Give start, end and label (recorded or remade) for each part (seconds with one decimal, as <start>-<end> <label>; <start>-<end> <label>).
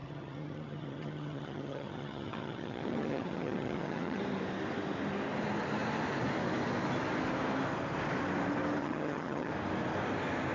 0.0-4.2 remade; 4.2-8.8 recorded; 8.8-9.5 remade; 9.5-10.5 recorded